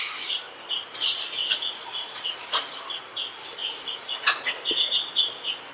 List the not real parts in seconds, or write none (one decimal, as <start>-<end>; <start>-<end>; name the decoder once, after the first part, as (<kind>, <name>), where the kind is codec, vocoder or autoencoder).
1.4-2.8 (vocoder, Vocos); 3.6-4.4